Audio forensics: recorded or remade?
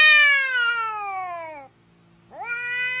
recorded